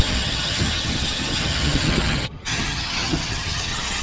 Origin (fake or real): fake